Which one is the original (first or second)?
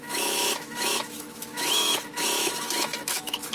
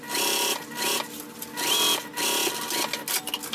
second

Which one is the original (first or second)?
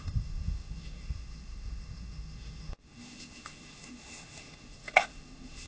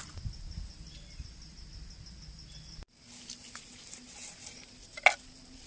second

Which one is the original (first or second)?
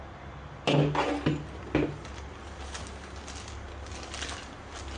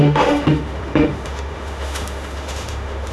first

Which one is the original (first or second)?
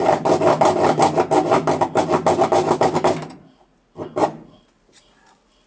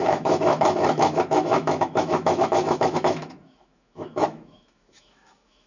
first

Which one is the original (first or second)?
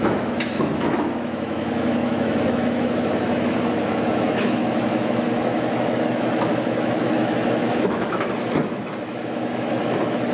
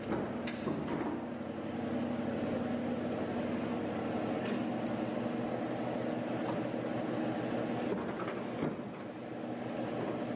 second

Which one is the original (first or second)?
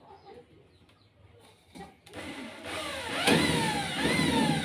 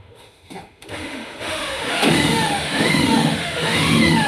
first